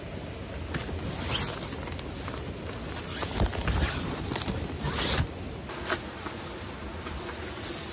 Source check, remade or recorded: recorded